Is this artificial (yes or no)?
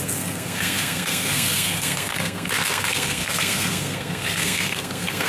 yes